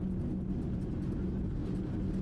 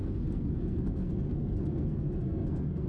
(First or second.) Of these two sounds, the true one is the first